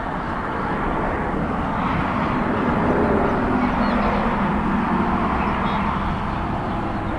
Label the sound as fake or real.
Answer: real